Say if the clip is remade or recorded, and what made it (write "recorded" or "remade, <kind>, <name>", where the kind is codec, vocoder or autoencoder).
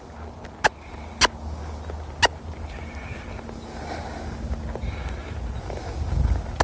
recorded